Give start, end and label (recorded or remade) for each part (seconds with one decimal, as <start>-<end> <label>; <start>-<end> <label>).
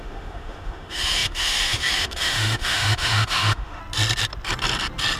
0.0-3.8 remade; 3.8-5.2 recorded